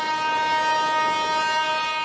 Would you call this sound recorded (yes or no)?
yes